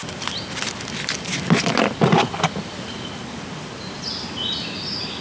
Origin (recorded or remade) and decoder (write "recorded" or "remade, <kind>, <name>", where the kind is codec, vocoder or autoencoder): recorded